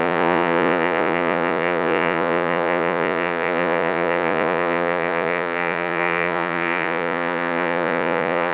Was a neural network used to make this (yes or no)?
yes